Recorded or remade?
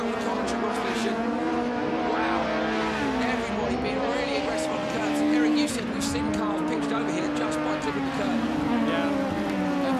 recorded